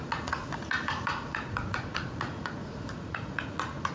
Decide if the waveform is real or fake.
fake